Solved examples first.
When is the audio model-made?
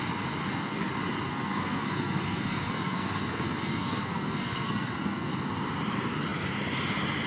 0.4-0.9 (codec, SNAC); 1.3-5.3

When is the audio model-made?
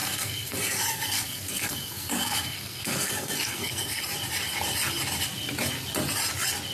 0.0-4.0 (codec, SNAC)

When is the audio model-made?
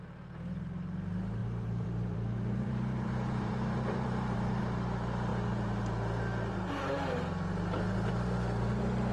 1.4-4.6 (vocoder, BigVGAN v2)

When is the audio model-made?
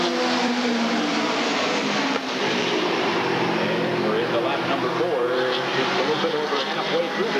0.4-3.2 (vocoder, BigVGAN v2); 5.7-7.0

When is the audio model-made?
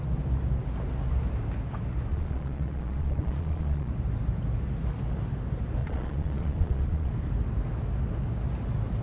2.1-3.9 (vocoder, Vocos); 5.8-7.1